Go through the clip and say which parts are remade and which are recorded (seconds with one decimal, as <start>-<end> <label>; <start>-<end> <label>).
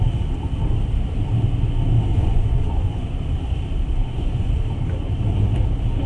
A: 0.0-2.1 recorded; 2.1-3.1 remade; 3.1-4.0 recorded; 4.0-4.6 remade; 4.6-6.1 recorded